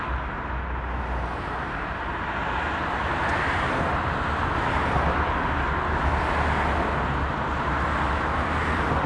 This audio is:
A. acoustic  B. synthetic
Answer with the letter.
A